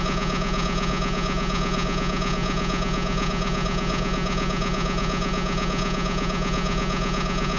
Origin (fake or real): fake